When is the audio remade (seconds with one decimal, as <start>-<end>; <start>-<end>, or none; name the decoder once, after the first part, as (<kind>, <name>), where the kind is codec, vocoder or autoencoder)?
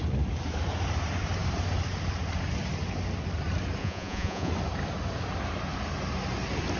3.8-4.5 (vocoder, Vocos)